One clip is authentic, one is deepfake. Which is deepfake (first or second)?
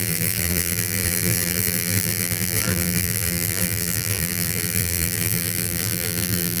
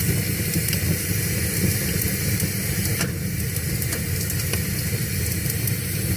first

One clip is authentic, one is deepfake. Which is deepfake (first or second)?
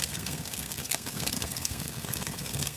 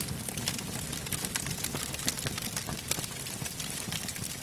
first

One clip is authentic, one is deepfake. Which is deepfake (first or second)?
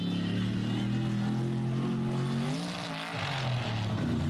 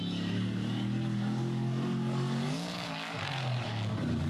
second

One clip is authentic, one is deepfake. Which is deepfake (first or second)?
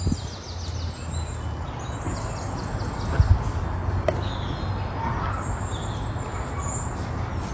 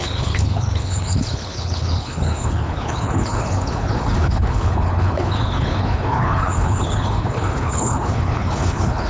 second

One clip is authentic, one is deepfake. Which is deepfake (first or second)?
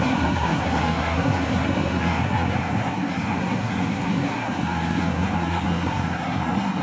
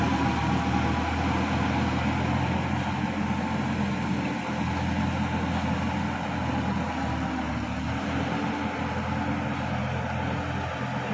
first